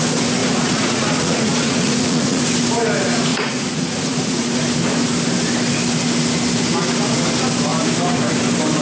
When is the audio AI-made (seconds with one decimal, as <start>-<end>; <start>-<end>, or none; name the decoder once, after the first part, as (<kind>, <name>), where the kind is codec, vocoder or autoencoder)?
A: 0.4-2.4 (vocoder, Vocos); 3.3-4.6